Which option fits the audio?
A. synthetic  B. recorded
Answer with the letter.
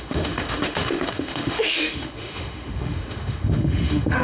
A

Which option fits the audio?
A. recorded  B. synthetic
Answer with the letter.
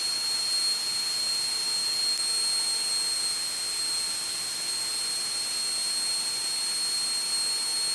A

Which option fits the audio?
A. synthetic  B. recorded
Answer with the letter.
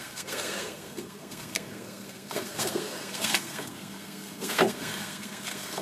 A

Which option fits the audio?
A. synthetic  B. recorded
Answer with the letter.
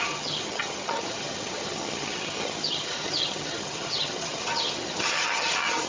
A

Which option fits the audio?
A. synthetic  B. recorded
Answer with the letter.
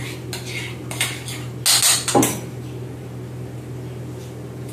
B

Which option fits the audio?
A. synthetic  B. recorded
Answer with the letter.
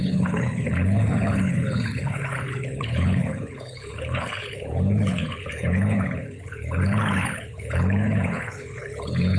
A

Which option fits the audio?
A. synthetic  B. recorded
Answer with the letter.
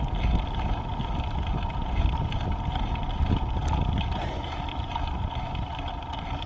B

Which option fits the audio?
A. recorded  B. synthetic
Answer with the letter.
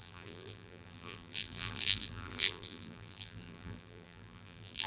B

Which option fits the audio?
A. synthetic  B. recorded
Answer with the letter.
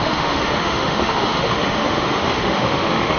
A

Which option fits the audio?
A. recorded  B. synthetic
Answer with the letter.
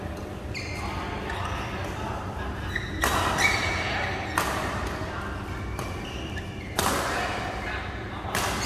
A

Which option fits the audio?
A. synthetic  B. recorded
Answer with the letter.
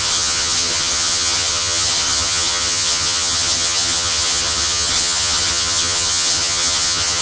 A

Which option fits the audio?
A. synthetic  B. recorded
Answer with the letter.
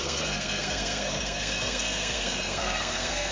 A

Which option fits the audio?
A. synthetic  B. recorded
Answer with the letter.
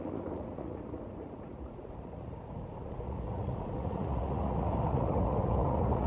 A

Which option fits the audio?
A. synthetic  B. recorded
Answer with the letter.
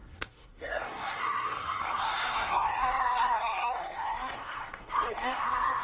A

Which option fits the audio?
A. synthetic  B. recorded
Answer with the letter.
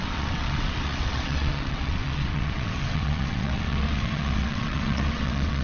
A